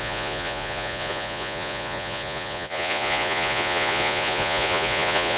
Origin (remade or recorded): remade